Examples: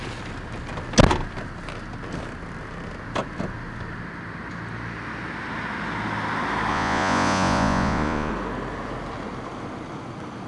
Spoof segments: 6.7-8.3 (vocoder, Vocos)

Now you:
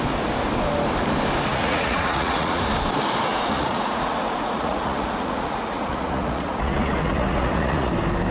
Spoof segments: 1.5-2.6 (vocoder, Vocos); 3.3-7.9

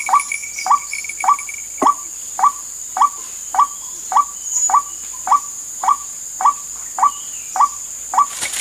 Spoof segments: 5.5-6.2 (vocoder, Vocos)

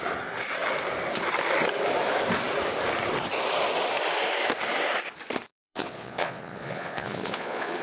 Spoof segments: 5.5-7.8 (vocoder, Vocos)

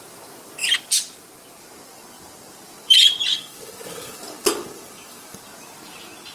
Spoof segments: 3.3-5.4 (codec, DAC)

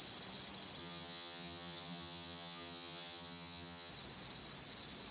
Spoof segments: 0.8-3.9 (vocoder, HiFi-GAN)

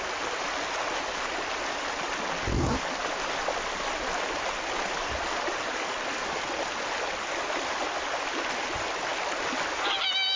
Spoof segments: none